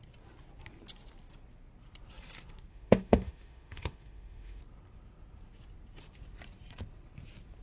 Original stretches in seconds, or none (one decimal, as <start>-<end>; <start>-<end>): 0.0-2.7; 4.6-7.6